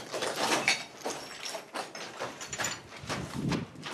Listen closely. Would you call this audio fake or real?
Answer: fake